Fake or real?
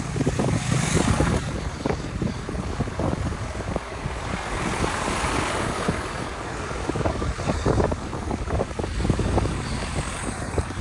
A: fake